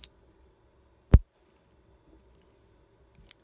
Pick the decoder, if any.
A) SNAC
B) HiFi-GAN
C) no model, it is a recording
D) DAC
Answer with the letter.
C